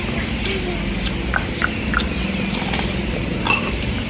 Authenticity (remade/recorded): recorded